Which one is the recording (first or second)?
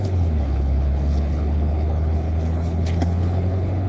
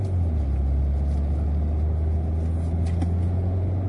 second